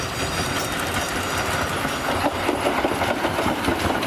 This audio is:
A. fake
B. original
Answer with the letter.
B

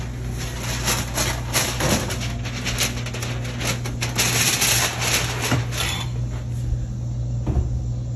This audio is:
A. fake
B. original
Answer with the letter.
B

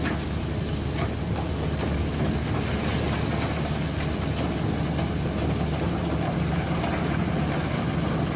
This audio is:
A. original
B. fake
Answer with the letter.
A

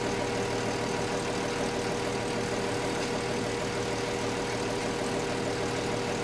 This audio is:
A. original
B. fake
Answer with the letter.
A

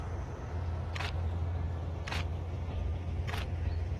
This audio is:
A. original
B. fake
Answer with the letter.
A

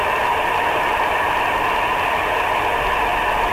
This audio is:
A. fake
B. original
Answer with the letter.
B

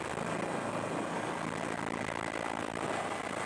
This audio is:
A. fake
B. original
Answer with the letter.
B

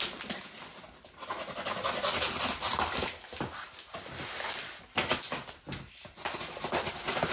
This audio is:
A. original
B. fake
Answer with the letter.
A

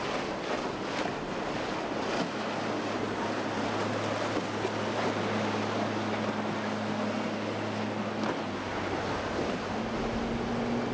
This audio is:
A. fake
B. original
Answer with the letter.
B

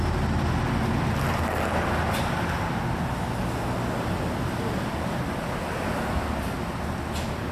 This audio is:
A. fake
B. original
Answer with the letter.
B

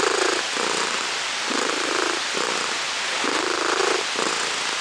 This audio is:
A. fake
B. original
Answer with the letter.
B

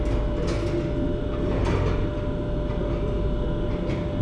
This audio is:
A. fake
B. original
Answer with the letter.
B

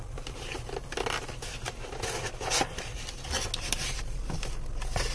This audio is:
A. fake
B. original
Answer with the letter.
B